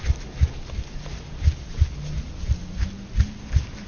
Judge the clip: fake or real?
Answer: real